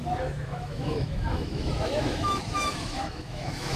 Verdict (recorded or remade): remade